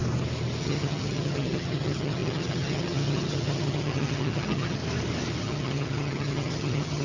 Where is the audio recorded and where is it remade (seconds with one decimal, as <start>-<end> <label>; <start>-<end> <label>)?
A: 0.0-0.6 recorded; 0.6-4.8 remade; 4.8-5.4 recorded; 5.4-7.0 remade